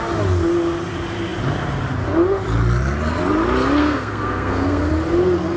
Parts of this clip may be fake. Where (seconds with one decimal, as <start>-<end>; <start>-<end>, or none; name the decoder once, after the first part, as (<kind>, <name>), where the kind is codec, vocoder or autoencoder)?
3.8-4.9 (codec, SNAC)